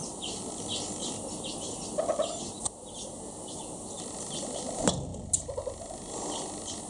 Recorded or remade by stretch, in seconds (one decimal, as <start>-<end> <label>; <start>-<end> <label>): 0.0-6.9 recorded